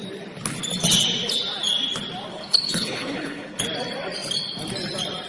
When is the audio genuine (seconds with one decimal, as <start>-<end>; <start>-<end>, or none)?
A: 0.0-2.3; 3.6-5.3